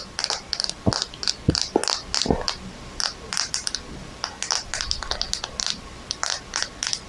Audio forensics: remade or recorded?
recorded